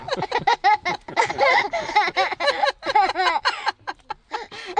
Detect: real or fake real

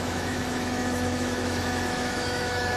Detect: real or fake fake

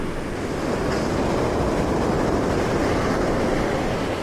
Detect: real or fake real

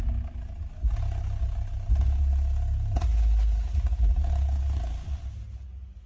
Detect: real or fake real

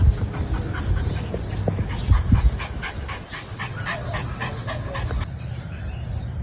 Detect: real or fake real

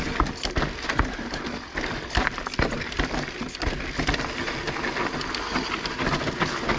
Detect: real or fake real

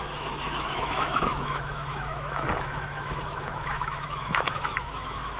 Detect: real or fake fake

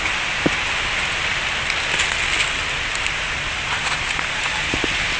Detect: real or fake real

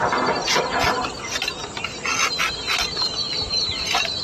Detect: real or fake real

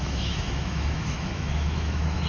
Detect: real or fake fake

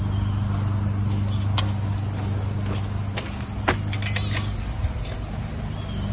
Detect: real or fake real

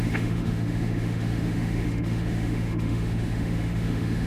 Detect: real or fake fake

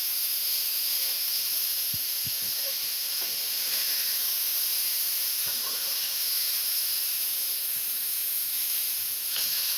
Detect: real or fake fake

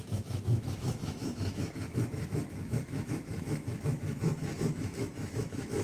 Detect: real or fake fake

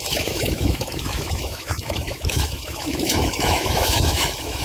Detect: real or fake fake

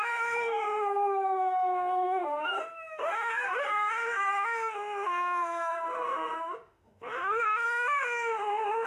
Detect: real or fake fake